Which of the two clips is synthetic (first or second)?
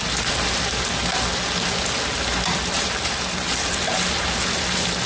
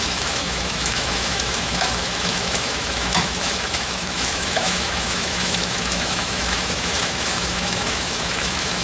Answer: second